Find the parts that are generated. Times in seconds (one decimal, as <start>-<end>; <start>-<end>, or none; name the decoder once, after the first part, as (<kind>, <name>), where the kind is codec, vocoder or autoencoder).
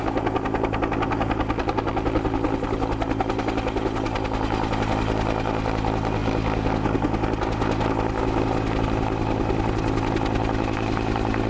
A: none